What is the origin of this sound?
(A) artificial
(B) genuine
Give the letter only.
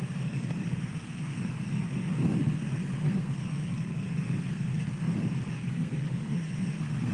A